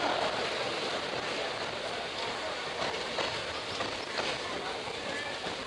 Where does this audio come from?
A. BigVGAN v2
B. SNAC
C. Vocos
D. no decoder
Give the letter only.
D